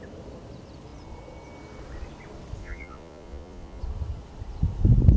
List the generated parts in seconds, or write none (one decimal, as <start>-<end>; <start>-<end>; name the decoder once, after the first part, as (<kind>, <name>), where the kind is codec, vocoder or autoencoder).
2.6-3.8 (vocoder, Vocos)